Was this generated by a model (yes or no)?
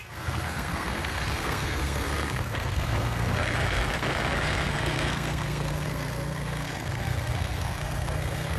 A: yes